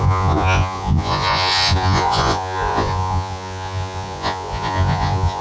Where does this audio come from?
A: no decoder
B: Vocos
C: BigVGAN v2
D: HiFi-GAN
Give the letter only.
B